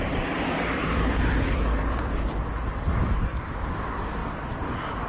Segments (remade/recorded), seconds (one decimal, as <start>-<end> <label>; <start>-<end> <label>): 0.0-4.2 remade; 4.2-5.1 recorded